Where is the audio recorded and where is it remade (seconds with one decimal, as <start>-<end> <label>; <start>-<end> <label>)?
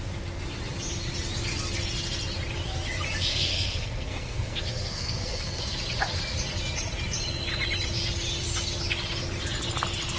0.0-3.3 recorded; 3.3-5.6 remade; 5.6-10.2 recorded